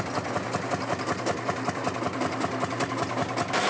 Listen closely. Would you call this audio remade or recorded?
remade